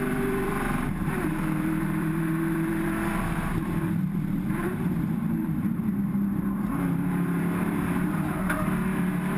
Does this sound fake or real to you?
fake